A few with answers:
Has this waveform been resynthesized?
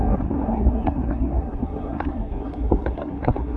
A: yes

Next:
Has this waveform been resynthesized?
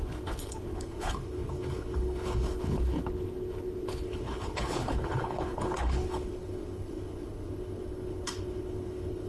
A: yes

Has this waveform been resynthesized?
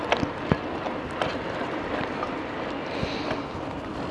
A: no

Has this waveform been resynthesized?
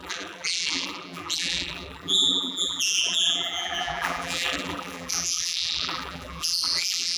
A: yes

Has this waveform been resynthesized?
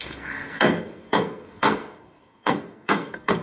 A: yes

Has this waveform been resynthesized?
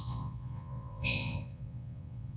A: yes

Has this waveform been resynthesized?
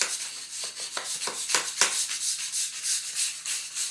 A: no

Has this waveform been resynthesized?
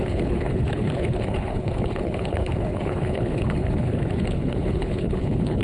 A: yes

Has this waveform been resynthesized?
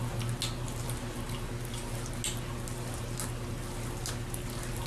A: no